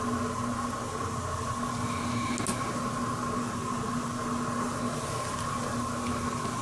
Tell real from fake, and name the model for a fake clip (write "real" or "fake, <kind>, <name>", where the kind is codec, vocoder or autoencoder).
real